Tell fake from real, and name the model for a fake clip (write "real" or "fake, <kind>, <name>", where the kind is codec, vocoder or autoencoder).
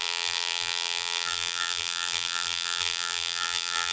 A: fake, vocoder, BigVGAN v2